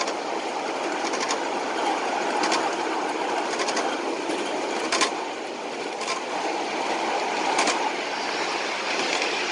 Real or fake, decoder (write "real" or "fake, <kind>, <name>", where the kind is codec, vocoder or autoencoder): real